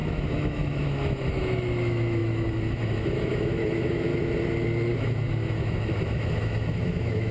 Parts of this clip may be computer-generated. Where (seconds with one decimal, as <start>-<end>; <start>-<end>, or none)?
0.0-4.1; 4.9-7.3